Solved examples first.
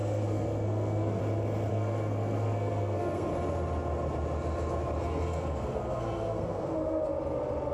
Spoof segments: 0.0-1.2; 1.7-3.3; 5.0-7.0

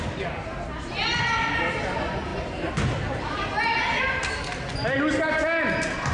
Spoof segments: none

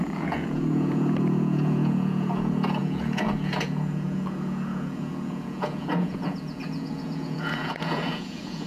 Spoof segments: 0.0-8.7

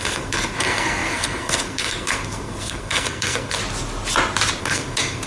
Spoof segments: 0.0-3.6; 4.6-5.3

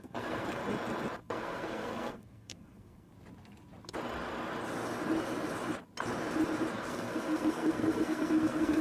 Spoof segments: 0.0-0.6; 1.2-3.1; 6.7-8.8

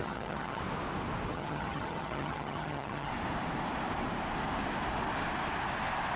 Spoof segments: 0.0-0.6; 1.3-3.1